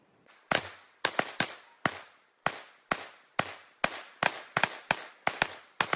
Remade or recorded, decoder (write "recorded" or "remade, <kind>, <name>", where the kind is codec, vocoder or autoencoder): recorded